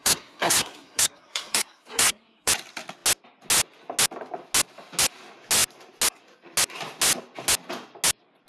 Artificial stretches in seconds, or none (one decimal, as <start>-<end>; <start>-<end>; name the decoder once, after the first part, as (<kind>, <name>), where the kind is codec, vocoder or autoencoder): 0.0-2.5 (codec, SNAC)